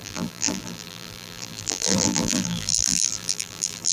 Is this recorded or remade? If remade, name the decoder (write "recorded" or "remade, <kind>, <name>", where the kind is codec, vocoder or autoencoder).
remade, vocoder, BigVGAN v2